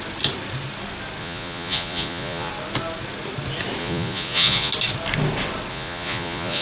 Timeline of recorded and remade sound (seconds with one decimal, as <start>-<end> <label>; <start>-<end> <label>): 0.0-1.2 recorded; 1.2-2.5 remade; 2.5-3.8 recorded; 3.8-4.7 remade; 4.7-5.7 recorded; 5.7-6.6 remade